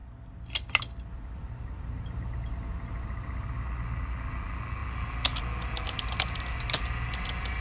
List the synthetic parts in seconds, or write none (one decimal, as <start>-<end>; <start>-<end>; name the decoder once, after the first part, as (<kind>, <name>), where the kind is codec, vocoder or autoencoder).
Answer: none